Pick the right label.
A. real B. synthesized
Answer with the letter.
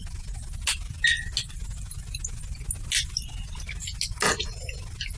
A